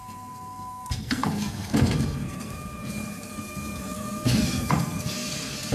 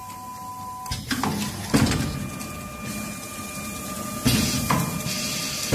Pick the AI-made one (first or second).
first